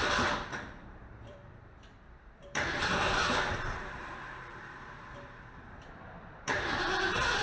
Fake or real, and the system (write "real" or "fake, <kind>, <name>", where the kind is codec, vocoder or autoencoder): fake, vocoder, BigVGAN v2